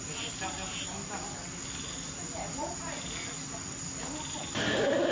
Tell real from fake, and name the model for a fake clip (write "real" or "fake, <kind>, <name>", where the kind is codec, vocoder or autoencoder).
real